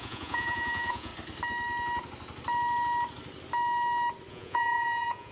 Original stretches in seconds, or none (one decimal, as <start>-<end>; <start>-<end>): 1.1-4.3